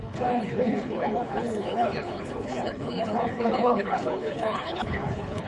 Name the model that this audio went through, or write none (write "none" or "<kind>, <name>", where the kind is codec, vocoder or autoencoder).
codec, HILCodec